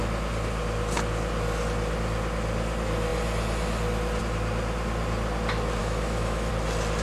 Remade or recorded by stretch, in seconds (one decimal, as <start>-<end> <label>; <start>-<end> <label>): 0.0-5.8 recorded; 5.8-6.5 remade; 6.5-7.0 recorded